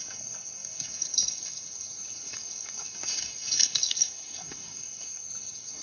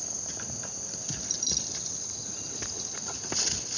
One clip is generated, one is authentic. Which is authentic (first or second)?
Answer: second